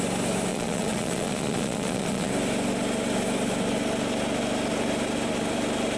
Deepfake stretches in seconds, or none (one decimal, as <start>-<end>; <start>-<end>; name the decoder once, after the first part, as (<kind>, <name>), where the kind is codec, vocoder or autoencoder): 0.5-2.3 (vocoder, Vocos)